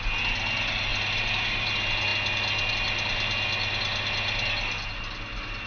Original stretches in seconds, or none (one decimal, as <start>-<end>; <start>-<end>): 0.0-0.9; 1.7-5.7